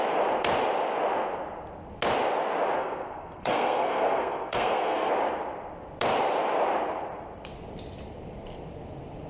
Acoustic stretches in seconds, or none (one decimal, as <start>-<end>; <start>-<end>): 0.0-2.8; 5.1-9.3